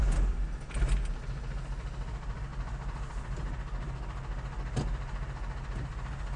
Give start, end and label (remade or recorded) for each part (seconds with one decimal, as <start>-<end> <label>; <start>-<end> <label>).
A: 0.0-6.4 recorded